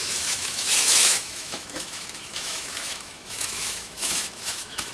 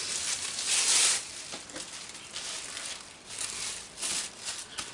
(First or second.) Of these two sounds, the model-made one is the first